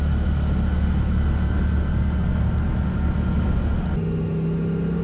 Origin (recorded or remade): recorded